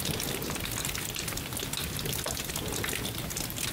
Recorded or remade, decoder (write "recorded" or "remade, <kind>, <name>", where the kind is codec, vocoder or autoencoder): recorded